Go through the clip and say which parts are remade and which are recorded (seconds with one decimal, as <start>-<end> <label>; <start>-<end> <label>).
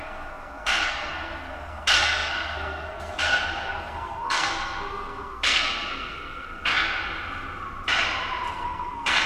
0.0-7.0 remade; 7.0-8.5 recorded; 8.5-9.3 remade